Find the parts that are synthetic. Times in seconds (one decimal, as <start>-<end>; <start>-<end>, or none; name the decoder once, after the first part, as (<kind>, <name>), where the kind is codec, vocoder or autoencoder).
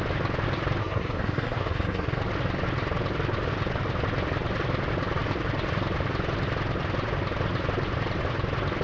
0.8-2.2 (codec, SNAC)